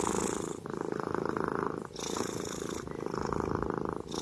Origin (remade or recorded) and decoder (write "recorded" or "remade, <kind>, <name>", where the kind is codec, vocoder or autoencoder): recorded